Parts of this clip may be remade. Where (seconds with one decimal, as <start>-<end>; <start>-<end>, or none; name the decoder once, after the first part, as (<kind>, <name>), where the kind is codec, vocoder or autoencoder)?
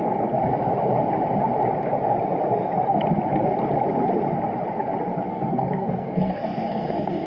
5.3-7.3 (codec, SNAC)